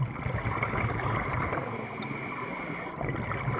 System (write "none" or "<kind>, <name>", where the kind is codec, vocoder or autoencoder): none